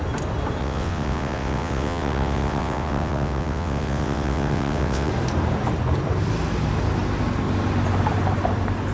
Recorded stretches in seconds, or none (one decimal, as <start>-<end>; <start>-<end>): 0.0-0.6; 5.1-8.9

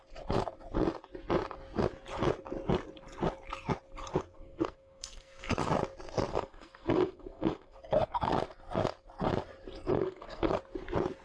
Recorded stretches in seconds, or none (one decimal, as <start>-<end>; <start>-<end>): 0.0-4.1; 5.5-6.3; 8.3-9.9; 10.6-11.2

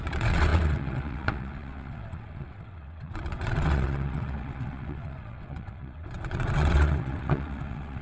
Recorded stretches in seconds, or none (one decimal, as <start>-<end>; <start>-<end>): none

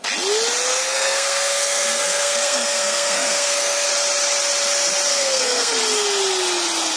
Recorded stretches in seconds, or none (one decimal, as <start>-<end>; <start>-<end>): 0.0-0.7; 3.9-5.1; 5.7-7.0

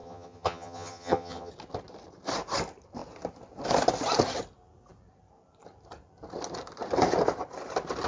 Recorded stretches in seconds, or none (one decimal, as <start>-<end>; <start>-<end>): 1.5-8.1

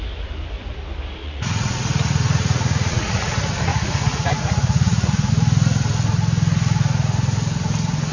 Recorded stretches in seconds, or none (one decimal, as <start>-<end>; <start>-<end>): 0.0-1.2; 3.3-3.7; 5.3-8.1

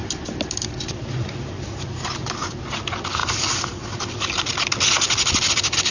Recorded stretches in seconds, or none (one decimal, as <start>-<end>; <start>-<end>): 2.8-5.9

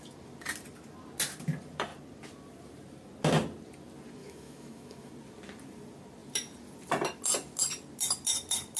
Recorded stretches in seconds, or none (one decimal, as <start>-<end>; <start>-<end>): 0.0-4.2; 5.1-8.8